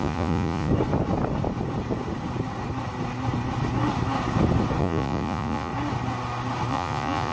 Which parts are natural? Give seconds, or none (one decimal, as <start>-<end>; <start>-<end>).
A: 0.7-4.8; 5.7-6.7